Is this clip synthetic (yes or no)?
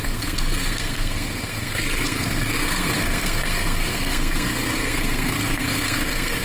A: yes